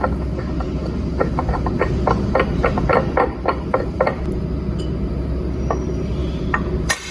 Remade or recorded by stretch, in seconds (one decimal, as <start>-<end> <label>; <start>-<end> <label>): 0.0-0.8 recorded; 0.8-4.2 remade; 4.2-6.2 recorded; 6.2-7.1 remade